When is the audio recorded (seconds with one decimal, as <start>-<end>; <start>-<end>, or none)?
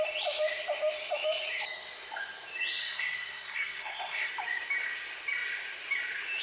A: 0.0-2.8; 4.3-6.4